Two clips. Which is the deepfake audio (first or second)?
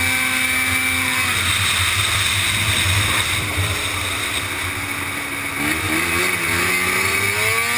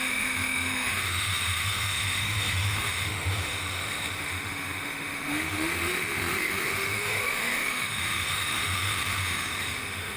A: second